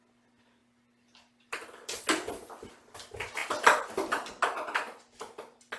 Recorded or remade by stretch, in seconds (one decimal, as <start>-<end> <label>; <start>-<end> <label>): 0.0-0.6 recorded; 0.6-2.0 remade; 2.0-5.8 recorded